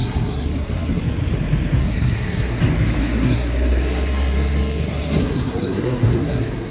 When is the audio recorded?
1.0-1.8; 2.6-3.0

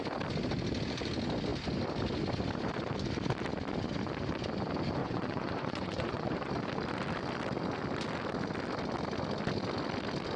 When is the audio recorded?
0.0-5.0; 6.5-10.4

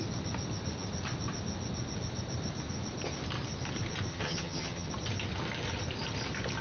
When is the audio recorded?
0.0-4.1; 4.9-6.6

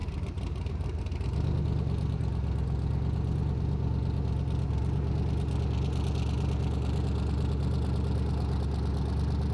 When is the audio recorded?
1.0-9.5

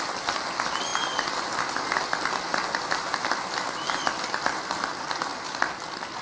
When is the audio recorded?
0.0-6.2